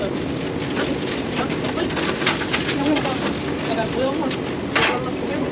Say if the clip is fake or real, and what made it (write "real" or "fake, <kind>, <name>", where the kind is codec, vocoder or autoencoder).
real